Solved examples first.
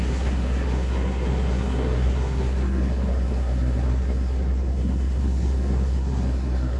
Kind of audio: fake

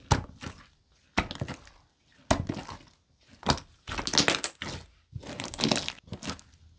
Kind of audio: real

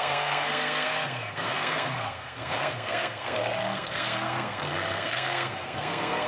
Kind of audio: fake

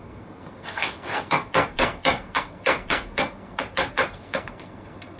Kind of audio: fake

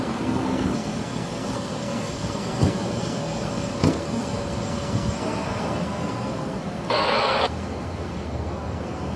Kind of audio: fake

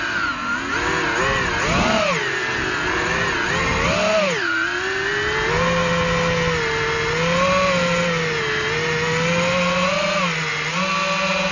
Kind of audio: real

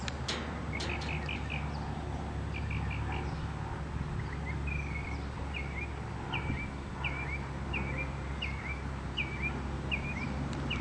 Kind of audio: real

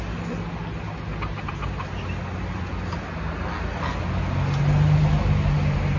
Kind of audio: real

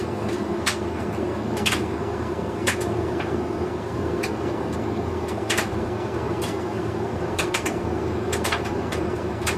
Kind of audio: fake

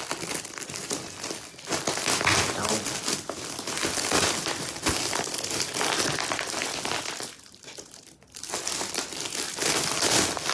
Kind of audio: real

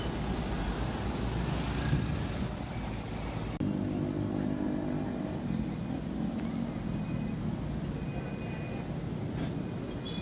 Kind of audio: real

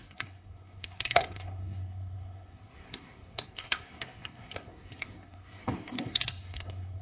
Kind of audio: fake